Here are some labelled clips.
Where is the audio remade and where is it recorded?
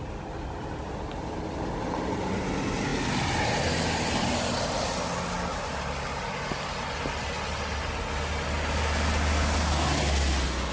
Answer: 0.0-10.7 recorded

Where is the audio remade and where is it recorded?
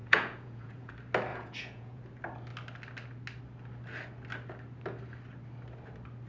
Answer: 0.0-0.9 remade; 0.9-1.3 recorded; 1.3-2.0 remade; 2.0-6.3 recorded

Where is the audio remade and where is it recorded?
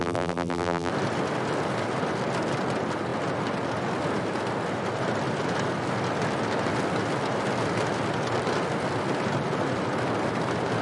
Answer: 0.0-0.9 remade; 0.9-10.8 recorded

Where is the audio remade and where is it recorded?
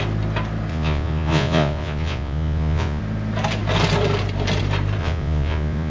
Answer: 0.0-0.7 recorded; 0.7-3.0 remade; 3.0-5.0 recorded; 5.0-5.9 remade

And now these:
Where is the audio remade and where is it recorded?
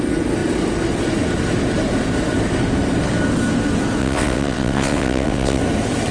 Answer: 0.0-4.0 recorded; 4.0-5.6 remade; 5.6-6.1 recorded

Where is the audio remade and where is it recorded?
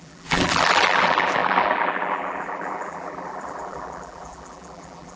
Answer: 0.0-5.2 remade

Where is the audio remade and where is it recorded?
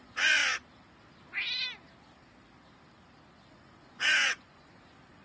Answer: 0.0-0.4 remade; 0.4-3.5 recorded; 3.5-5.2 remade